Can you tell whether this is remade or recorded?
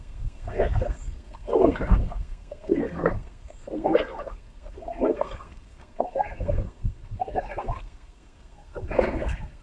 remade